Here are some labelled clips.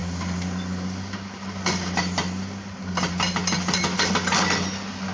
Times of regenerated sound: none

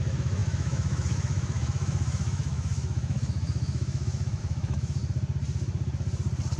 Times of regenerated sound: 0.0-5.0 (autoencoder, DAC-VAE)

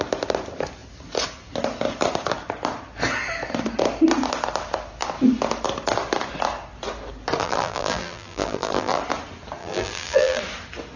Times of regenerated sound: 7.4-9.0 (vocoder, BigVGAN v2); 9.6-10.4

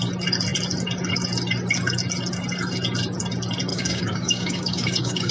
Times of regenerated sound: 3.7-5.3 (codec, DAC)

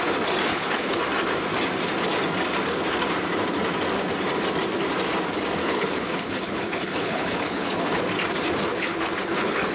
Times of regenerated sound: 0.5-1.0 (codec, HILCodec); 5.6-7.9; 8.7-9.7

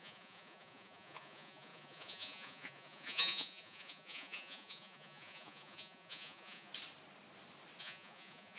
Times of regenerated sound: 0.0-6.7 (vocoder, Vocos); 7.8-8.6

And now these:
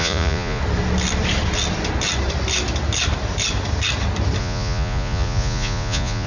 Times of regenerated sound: 0.0-0.6 (vocoder, Vocos); 4.4-6.3

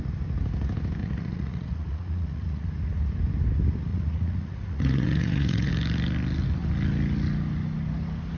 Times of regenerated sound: 1.0-2.7 (vocoder, Vocos); 3.9-5.7